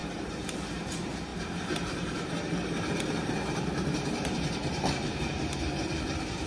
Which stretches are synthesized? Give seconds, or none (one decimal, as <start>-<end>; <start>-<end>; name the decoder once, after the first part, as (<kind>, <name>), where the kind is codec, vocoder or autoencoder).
0.0-6.5 (vocoder, BigVGAN v2)